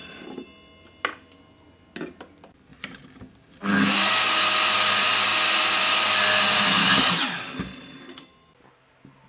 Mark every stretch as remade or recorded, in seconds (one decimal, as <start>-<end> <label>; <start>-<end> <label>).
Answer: 0.0-9.3 recorded

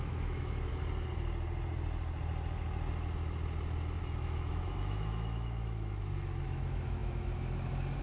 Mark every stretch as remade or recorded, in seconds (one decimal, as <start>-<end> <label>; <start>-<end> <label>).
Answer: 0.0-0.7 remade; 0.7-4.0 recorded; 4.0-8.0 remade

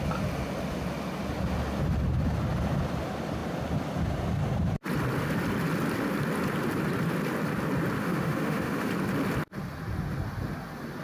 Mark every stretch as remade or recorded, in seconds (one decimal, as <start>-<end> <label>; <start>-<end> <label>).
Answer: 0.0-8.0 recorded; 8.0-8.9 remade; 8.9-11.0 recorded

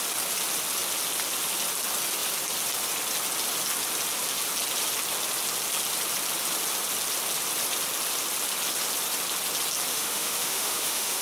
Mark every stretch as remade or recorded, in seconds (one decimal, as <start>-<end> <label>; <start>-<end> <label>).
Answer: 0.0-9.9 recorded; 9.9-11.2 remade

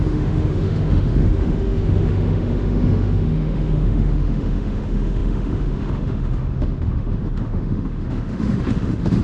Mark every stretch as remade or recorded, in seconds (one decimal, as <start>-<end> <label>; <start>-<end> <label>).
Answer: 0.0-9.2 remade

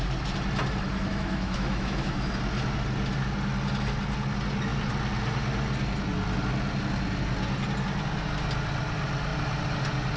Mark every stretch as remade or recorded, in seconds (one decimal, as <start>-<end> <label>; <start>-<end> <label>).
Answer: 0.0-1.1 recorded; 1.1-2.3 remade; 2.3-10.2 recorded

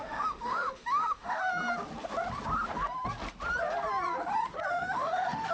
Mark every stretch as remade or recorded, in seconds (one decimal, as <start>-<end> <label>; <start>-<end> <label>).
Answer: 0.0-1.4 remade; 1.4-4.7 recorded; 4.7-5.5 remade